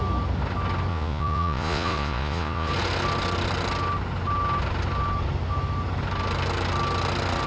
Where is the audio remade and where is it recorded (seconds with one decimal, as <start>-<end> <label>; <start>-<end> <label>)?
0.0-0.9 recorded; 0.9-2.7 remade; 2.7-7.5 recorded